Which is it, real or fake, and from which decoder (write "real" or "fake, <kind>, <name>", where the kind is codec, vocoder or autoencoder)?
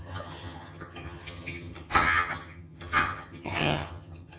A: fake, vocoder, HiFi-GAN